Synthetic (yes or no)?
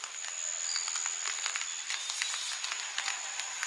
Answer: no